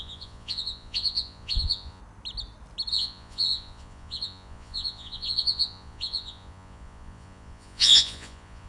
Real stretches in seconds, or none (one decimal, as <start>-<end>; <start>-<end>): 2.0-2.9